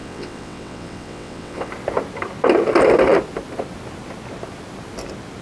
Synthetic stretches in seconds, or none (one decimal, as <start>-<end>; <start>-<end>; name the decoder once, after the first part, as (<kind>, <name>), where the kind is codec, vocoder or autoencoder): 0.0-1.7 (vocoder, WaveNeXt)